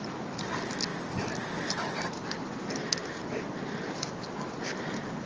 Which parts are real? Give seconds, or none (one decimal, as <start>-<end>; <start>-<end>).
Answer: 0.0-5.3